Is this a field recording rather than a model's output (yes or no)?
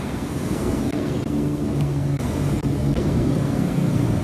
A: no